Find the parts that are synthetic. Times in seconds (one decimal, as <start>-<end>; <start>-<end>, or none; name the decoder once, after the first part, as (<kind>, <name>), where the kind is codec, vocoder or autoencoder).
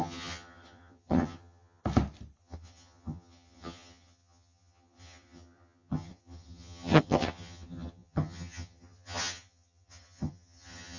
0.0-1.8 (vocoder, HiFi-GAN); 2.4-11.0